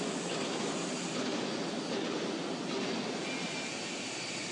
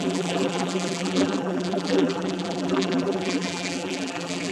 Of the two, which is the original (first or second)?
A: first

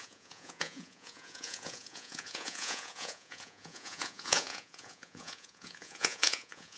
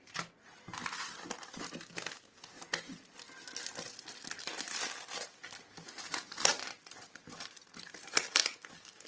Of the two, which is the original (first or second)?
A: second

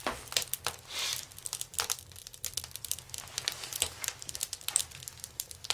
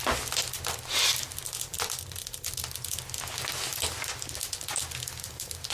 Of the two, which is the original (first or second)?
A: second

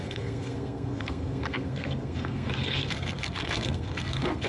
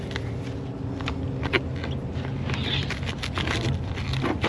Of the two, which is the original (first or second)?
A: second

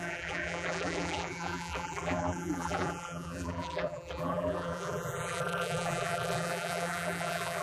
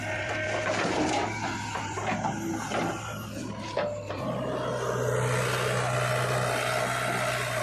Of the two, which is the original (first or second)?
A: second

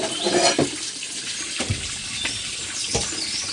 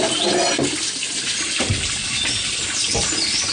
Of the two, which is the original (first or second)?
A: second